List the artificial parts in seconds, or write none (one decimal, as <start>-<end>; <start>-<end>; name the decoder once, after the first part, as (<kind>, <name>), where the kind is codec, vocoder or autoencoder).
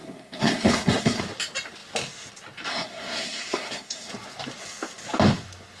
0.0-1.2 (codec, SNAC); 2.7-4.1